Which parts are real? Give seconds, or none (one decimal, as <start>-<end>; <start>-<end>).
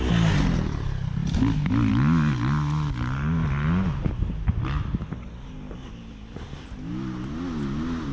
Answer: 0.0-8.1